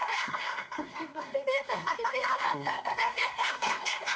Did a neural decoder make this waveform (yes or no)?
yes